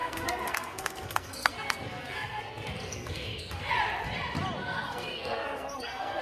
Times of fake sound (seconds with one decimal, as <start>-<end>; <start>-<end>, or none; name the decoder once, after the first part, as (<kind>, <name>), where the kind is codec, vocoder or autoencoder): 0.0-3.7 (codec, SNAC); 4.6-6.2